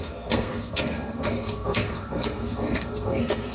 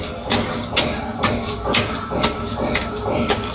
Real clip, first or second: second